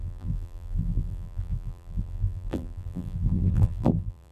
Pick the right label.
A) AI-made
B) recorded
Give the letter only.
A